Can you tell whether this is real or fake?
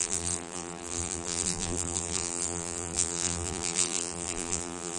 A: fake